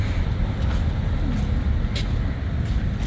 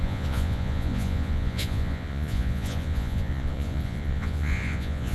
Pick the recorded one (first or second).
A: first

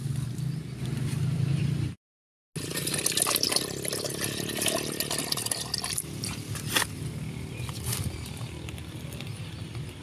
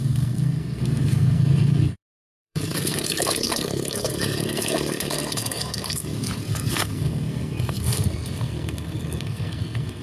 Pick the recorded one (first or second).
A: first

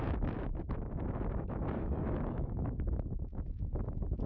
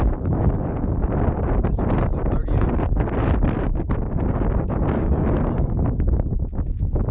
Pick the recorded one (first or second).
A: second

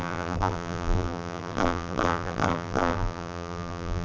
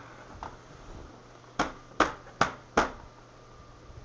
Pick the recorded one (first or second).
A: second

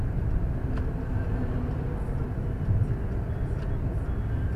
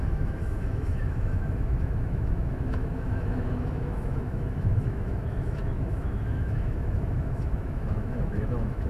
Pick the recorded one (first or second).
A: first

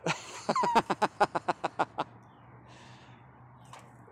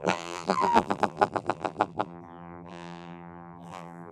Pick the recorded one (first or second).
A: first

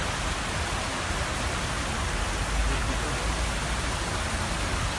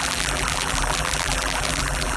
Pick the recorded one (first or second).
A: first